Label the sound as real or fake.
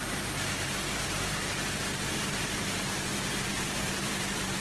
fake